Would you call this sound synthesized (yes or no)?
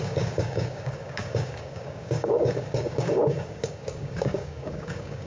yes